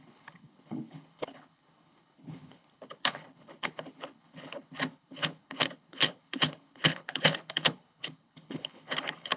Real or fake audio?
fake